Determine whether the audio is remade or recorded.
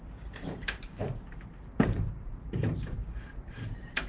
remade